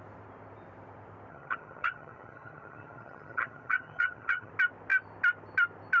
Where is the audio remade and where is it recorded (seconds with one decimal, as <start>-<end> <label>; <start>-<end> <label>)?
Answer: 0.0-1.3 recorded; 1.3-4.5 remade; 4.5-6.0 recorded